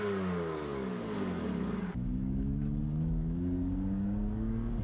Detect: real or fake fake